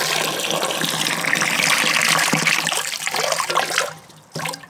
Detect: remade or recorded recorded